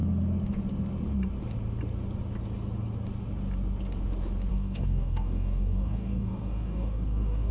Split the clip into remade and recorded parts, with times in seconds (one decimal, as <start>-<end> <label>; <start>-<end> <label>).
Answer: 0.0-4.5 recorded; 4.5-7.5 remade